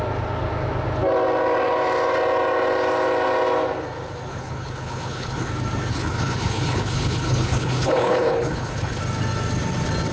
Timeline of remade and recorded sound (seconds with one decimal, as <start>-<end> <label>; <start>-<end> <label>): 0.0-4.3 recorded; 4.3-5.5 remade; 5.5-5.9 recorded; 5.9-9.0 remade; 9.0-10.1 recorded